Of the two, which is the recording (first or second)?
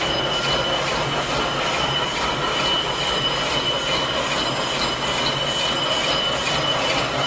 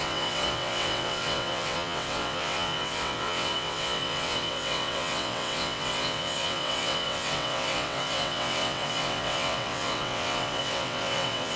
first